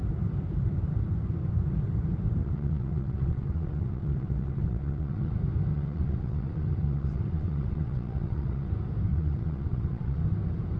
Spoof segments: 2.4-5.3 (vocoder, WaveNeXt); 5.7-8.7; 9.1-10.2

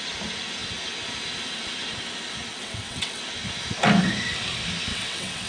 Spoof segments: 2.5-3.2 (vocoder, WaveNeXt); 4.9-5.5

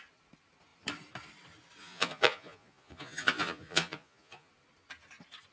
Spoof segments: 1.8-4.5 (vocoder, Vocos)

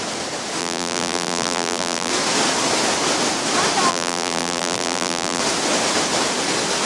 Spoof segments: 0.6-2.1 (vocoder, BigVGAN v2); 3.9-5.4